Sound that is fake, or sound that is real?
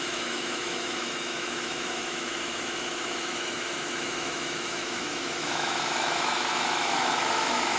fake